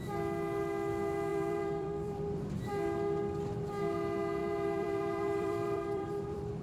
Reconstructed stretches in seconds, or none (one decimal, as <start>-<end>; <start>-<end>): 1.3-2.5; 4.4-6.6